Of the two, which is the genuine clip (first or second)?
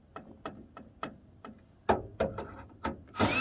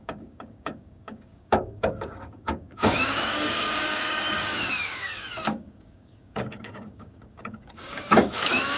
first